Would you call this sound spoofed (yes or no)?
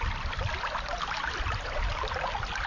no